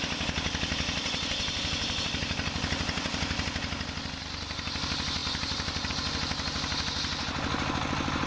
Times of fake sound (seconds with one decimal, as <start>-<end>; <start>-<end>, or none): none